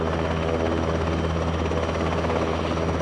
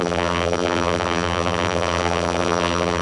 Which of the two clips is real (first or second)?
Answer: first